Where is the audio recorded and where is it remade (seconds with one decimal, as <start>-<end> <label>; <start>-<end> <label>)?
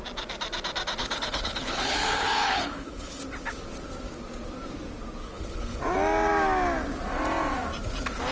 0.0-1.0 recorded; 1.0-3.2 remade; 3.2-5.2 recorded; 5.2-5.8 remade; 5.8-8.3 recorded